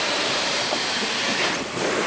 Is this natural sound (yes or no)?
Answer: no